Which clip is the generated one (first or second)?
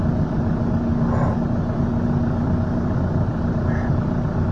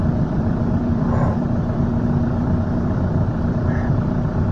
second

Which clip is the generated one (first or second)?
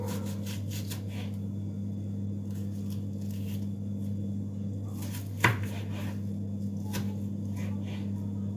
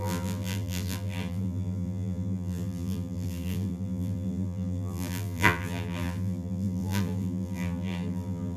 second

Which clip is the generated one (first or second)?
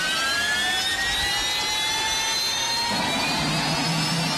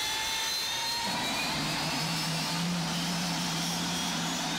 second